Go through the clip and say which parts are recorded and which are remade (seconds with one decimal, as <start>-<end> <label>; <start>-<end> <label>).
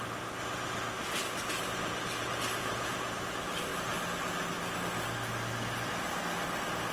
0.0-2.6 recorded; 2.6-3.2 remade; 3.2-6.9 recorded